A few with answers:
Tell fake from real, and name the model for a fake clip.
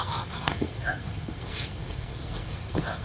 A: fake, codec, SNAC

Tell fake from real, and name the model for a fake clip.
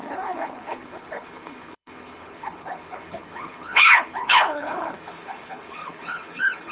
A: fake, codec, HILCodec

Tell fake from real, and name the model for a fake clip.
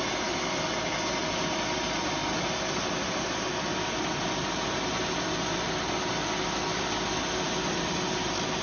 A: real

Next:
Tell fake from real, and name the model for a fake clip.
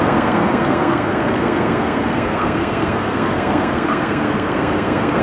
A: fake, codec, SNAC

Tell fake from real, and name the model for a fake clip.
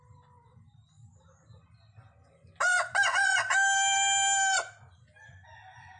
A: real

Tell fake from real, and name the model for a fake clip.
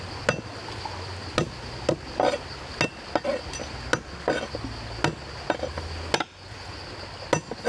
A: real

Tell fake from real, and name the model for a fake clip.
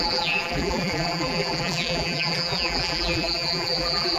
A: fake, vocoder, BigVGAN v2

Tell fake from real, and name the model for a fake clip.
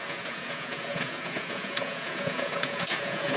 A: fake, vocoder, Vocos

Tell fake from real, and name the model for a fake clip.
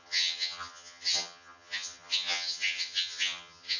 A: fake, vocoder, HiFi-GAN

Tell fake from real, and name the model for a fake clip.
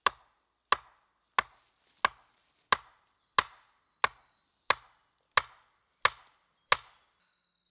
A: real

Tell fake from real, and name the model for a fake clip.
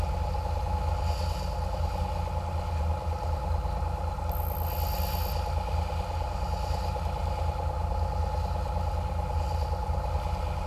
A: real